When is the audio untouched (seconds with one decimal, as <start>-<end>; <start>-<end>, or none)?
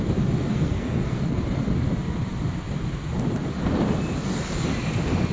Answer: 0.0-0.5; 1.4-5.3